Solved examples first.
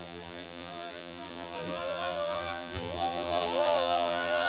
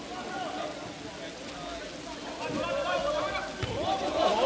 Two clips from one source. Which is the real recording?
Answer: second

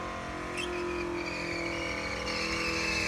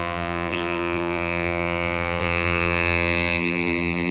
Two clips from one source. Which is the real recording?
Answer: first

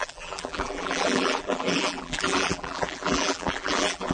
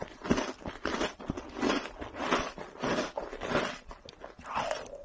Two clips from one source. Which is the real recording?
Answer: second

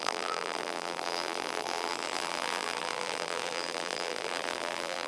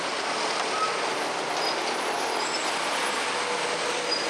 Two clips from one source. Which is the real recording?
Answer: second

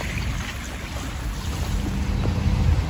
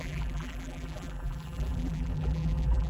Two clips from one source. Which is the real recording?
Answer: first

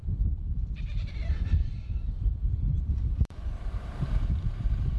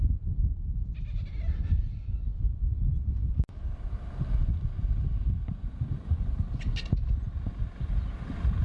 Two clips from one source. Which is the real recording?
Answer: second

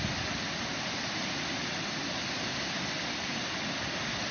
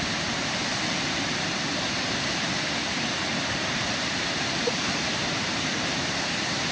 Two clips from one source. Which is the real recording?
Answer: first